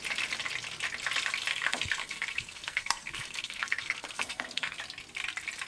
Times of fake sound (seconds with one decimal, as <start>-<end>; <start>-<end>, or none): 1.5-4.8